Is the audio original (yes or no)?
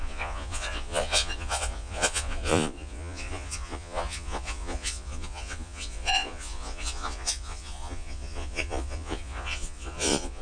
no